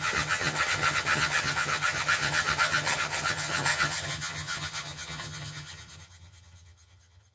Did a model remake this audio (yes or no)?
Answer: yes